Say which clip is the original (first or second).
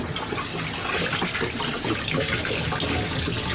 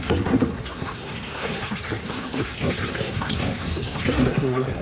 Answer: first